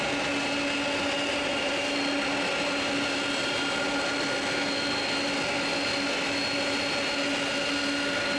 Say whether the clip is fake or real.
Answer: real